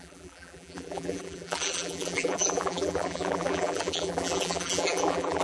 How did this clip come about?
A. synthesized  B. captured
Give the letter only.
A